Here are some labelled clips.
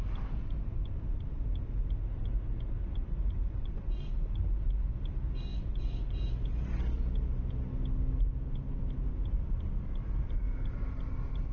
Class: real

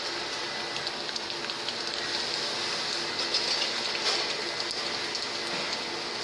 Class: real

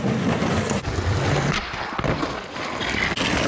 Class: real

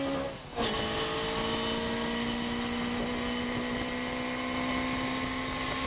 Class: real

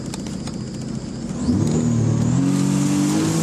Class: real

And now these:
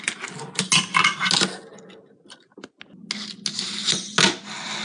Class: real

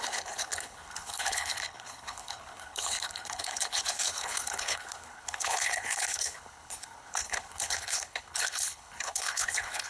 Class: fake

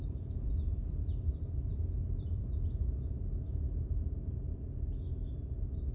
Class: real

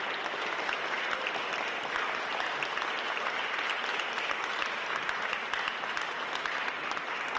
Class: real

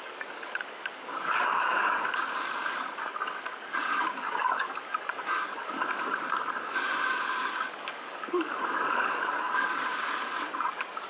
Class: fake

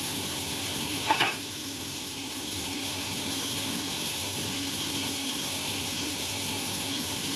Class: fake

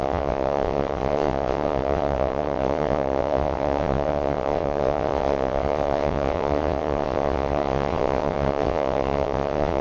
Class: fake